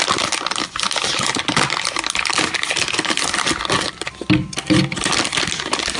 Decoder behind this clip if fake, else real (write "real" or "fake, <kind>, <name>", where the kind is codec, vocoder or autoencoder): real